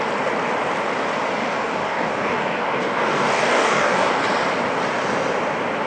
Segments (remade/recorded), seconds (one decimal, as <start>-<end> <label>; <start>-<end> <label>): 0.0-1.4 recorded; 1.4-4.2 remade; 4.2-5.9 recorded